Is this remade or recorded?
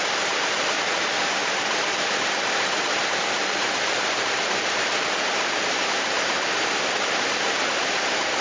remade